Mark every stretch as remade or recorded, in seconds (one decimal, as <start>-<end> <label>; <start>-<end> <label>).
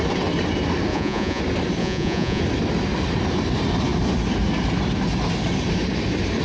0.0-0.9 recorded; 0.9-1.4 remade; 1.4-1.8 recorded; 1.8-2.4 remade; 2.4-6.4 recorded